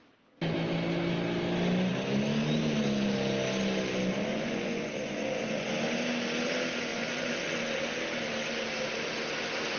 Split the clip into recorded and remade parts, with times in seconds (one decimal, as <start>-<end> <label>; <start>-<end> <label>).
0.0-4.3 recorded; 4.3-5.7 remade; 5.7-6.9 recorded; 6.9-7.6 remade; 7.6-9.8 recorded